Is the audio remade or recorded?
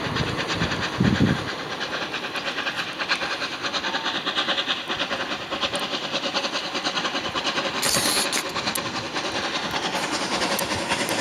recorded